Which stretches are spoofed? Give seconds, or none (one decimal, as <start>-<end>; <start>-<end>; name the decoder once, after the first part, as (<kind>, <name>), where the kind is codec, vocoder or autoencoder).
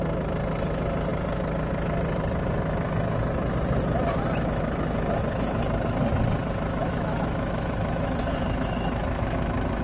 6.8-9.8 (autoencoder, DAC-VAE)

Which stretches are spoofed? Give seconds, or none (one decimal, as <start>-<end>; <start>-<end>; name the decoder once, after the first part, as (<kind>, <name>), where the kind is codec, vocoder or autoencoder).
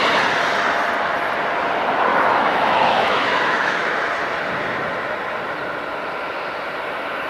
2.1-3.9 (autoencoder, DAC-VAE)